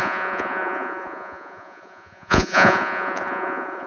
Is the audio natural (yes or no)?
no